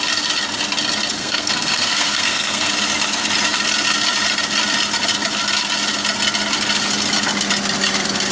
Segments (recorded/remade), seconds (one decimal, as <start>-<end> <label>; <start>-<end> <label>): 0.0-1.2 recorded; 1.2-2.7 remade; 2.7-8.3 recorded